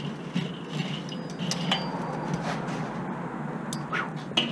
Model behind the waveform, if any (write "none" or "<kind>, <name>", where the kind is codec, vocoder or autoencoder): none